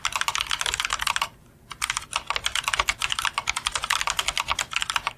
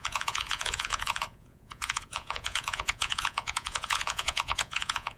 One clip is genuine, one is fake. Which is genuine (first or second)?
first